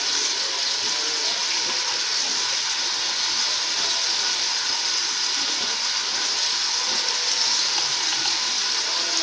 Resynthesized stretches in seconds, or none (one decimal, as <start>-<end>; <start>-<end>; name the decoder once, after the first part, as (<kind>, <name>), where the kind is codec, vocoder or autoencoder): none